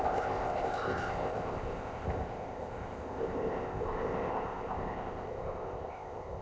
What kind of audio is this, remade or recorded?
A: remade